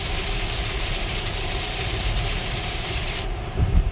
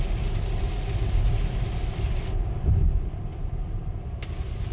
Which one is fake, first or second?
first